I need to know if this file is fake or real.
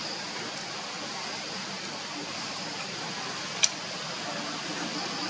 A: real